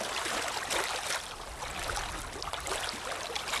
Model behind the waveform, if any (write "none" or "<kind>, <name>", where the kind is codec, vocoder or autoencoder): none